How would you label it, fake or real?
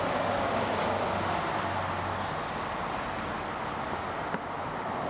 real